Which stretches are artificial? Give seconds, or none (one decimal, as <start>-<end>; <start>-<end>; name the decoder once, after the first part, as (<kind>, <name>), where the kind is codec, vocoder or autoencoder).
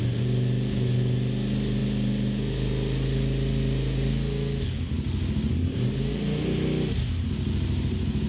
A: none